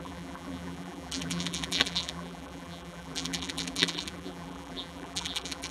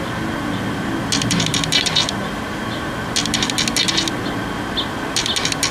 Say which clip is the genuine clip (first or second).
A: second